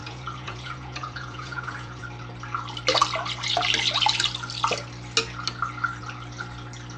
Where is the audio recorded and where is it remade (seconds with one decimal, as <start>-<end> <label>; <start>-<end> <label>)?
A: 0.0-2.0 remade; 2.0-7.0 recorded